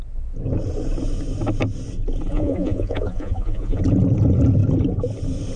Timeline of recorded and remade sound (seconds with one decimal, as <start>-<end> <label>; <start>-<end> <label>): 0.0-2.3 recorded; 2.3-3.8 remade; 3.8-5.6 recorded